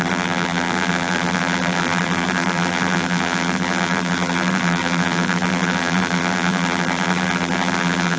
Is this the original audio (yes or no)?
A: no